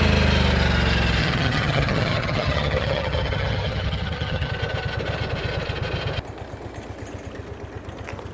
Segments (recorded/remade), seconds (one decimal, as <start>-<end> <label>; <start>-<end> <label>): 0.0-1.2 recorded; 1.2-4.5 remade; 4.5-8.3 recorded